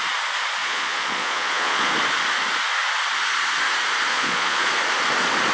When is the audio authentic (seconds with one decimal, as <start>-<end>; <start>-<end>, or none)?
0.0-0.6; 1.9-4.1; 4.7-5.5